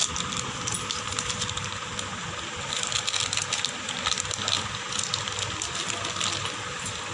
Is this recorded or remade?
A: recorded